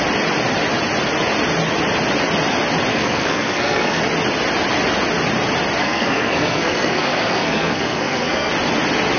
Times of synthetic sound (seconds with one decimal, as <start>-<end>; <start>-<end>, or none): 2.9-4.0; 5.8-8.5